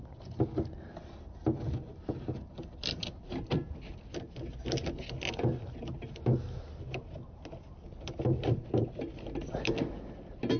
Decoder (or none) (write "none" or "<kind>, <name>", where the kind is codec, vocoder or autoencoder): none